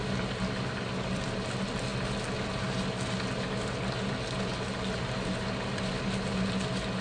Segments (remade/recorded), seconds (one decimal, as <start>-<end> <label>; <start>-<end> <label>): 0.0-7.0 recorded